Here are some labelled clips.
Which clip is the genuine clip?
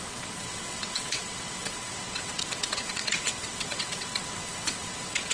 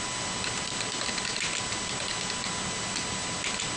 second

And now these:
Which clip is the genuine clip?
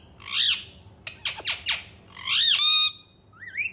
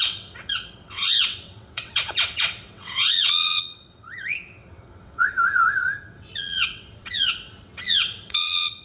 first